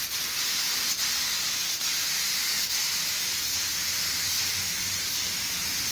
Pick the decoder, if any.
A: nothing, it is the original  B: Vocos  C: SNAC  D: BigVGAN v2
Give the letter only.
A